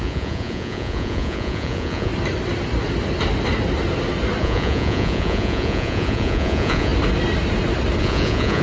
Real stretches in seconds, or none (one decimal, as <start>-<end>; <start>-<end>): 2.1-4.4; 6.9-8.0